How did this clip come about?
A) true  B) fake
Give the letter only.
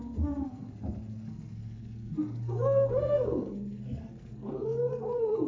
B